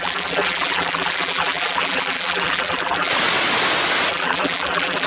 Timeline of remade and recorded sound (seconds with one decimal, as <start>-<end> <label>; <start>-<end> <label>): 0.0-3.1 remade; 3.1-4.1 recorded; 4.1-5.1 remade